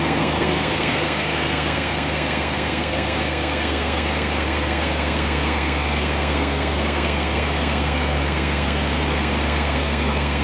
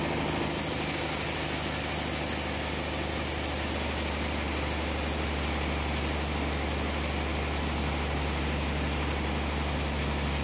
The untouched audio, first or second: second